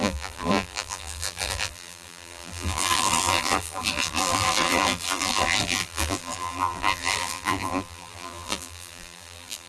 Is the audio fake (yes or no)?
yes